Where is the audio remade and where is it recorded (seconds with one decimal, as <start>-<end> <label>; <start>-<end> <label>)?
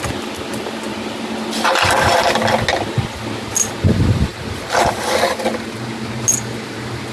0.0-7.1 recorded